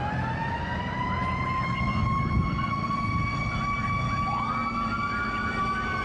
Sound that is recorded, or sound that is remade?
recorded